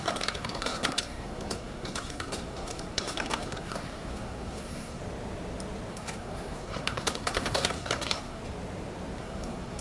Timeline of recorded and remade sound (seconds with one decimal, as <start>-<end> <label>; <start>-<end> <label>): 0.0-5.0 remade; 5.0-5.9 recorded; 5.9-8.4 remade; 8.4-9.2 recorded; 9.2-9.8 remade